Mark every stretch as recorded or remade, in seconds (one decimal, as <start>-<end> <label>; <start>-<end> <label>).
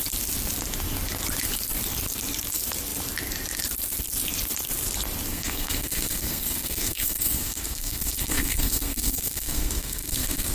0.0-5.3 recorded; 5.3-10.5 remade